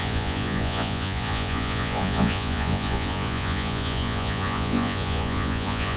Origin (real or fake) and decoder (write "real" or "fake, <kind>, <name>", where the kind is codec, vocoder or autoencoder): fake, vocoder, Vocos